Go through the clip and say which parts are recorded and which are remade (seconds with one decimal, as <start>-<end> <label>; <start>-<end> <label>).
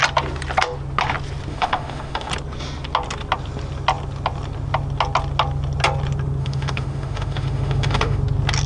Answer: 0.0-1.5 recorded; 1.5-2.3 remade; 2.3-6.4 recorded; 6.4-8.2 remade; 8.2-8.7 recorded